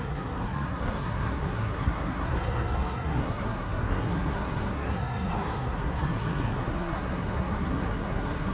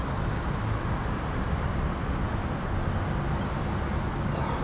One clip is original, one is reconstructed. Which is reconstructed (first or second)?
first